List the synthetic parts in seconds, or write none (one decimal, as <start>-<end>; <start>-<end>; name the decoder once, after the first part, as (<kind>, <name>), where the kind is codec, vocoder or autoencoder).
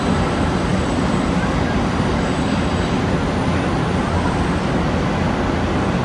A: 0.7-2.7 (vocoder, BigVGAN v2)